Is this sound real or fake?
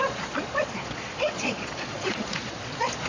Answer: fake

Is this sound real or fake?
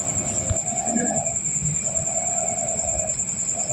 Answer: real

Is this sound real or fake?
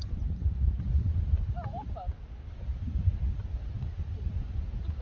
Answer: real